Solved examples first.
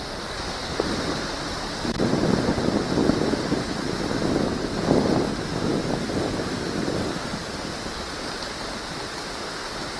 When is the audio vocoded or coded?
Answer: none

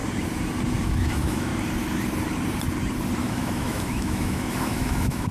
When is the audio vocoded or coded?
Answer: 0.8-1.5 (autoencoder, DAC-VAE); 3.2-5.3

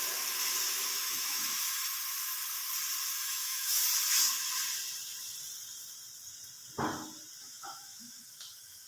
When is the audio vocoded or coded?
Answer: 0.0-2.3 (autoencoder, DAC-VAE); 3.2-3.8; 7.4-8.9

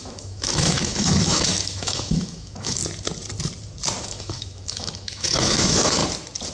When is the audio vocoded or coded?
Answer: 0.0-2.8 (autoencoder, DAC-VAE); 4.0-6.0

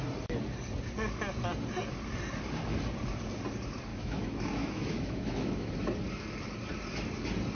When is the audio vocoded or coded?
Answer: 3.9-5.7 (autoencoder, DAC-VAE)

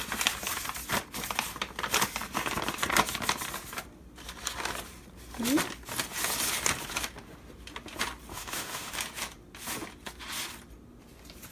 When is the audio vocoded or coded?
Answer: 8.3-8.9 (autoencoder, DAC-VAE)

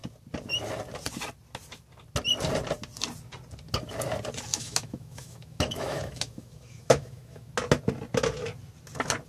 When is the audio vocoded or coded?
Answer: 4.5-7.5 (autoencoder, DAC-VAE)